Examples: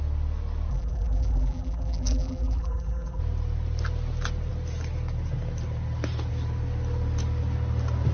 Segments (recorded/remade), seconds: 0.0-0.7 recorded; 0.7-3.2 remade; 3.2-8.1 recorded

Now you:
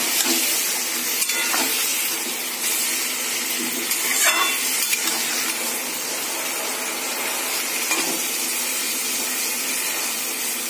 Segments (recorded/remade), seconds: 0.0-1.9 recorded; 1.9-2.7 remade; 2.7-10.7 recorded

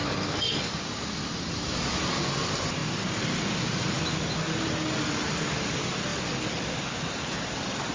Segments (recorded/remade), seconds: 0.0-0.7 remade; 0.7-7.9 recorded

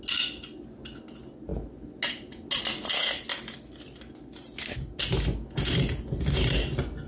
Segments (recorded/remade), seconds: 0.0-7.1 recorded

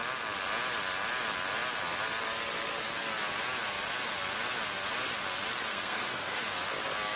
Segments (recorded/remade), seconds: 0.0-5.7 recorded; 5.7-6.4 remade; 6.4-7.2 recorded

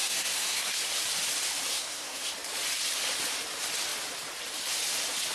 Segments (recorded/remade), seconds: 0.0-0.8 remade; 0.8-1.7 recorded; 1.7-2.3 remade; 2.3-5.3 recorded

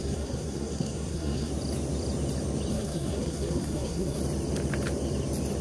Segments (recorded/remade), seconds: 0.0-1.5 remade; 1.5-2.7 recorded; 2.7-4.2 remade; 4.2-5.6 recorded